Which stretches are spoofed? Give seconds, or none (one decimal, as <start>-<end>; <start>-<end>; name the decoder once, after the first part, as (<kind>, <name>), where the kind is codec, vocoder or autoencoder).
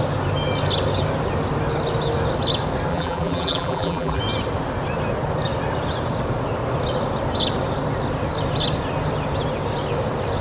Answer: 2.9-4.2 (vocoder, BigVGAN v2)